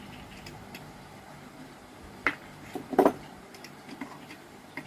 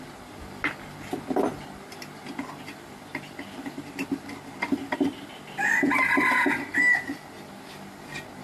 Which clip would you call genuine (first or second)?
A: second